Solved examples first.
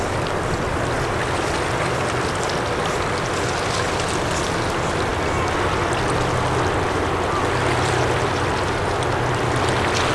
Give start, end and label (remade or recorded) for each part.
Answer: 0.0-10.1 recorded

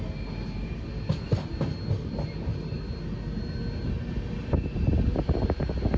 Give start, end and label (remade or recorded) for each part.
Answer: 0.0-6.0 recorded

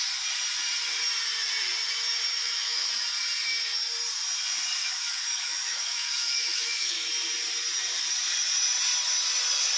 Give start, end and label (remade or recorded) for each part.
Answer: 0.0-2.3 recorded; 2.3-2.9 remade; 2.9-4.8 recorded; 4.8-7.1 remade; 7.1-9.8 recorded

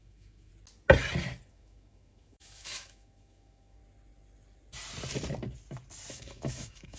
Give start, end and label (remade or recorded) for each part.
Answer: 0.0-0.5 remade; 0.5-1.5 recorded; 1.5-3.8 remade; 3.8-6.1 recorded; 6.1-7.0 remade